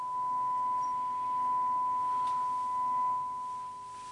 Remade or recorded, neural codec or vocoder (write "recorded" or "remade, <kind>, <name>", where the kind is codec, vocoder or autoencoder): recorded